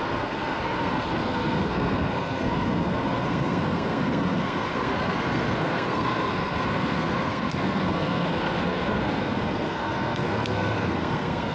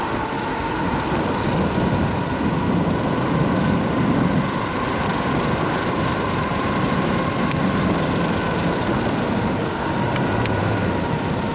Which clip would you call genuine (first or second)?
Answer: second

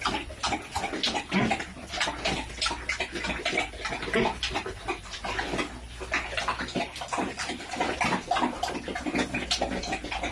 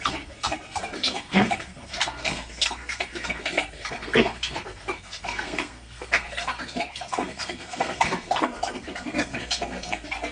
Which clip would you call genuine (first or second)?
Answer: first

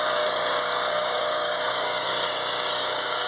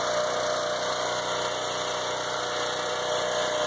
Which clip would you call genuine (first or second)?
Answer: second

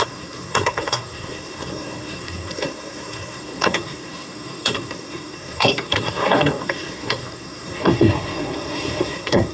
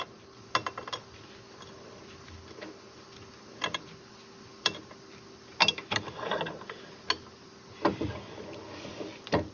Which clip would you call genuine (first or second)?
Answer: second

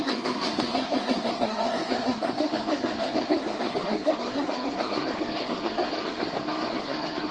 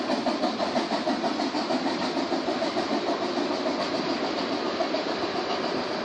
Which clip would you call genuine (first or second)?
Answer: second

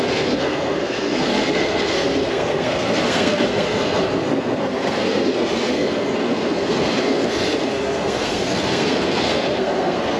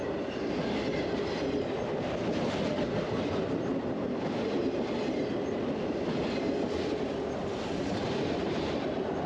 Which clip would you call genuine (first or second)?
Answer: second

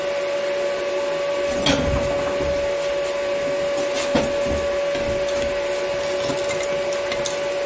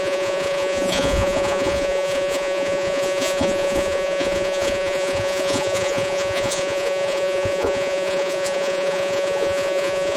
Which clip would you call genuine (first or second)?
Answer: first